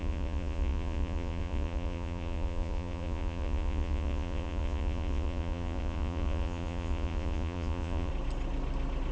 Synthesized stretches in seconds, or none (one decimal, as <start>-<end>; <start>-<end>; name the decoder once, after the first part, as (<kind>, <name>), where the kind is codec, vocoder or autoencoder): 0.0-8.1 (vocoder, Vocos)